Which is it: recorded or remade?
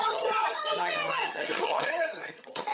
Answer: remade